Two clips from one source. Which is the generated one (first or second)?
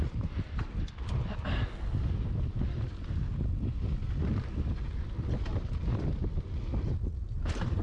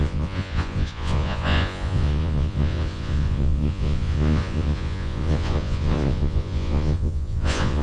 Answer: second